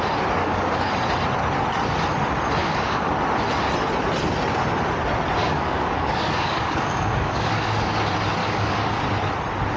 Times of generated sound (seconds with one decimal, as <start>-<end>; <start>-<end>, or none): 0.4-0.9; 2.6-3.1; 5.4-7.9; 8.4-9.0